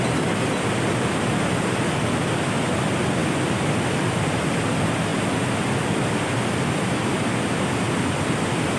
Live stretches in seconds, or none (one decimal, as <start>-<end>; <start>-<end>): 0.0-8.8